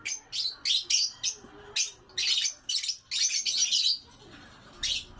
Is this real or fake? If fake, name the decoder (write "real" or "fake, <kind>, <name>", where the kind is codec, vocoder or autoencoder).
real